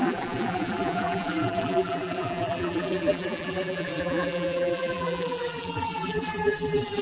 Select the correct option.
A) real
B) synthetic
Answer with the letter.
B